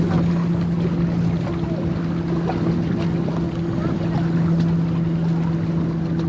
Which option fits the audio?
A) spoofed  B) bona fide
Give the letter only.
B